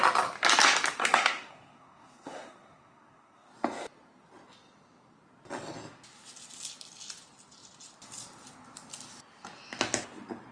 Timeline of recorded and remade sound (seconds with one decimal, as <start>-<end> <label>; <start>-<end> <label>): 0.0-1.0 recorded; 1.0-3.5 remade; 3.5-10.5 recorded